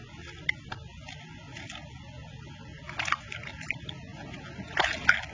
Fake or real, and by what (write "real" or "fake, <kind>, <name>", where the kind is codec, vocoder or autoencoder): real